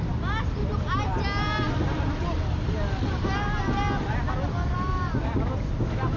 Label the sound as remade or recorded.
recorded